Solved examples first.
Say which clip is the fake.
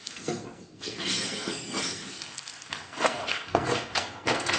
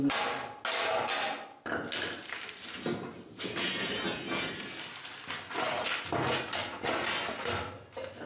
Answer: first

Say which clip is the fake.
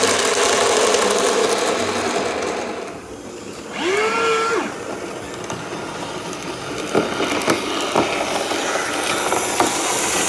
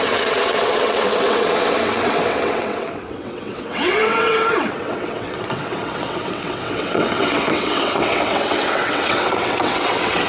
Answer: second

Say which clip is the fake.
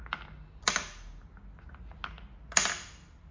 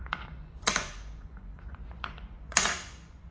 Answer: second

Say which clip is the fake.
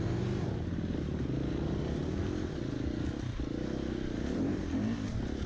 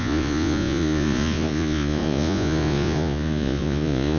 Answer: second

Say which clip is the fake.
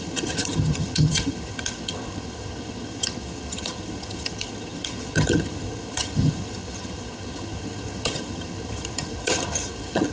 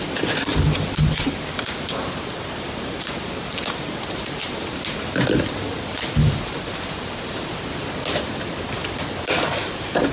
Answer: first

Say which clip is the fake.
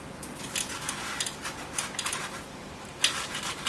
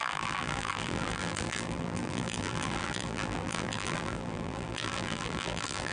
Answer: second